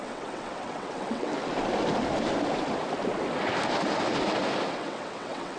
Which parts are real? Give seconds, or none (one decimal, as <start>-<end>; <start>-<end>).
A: 1.3-4.7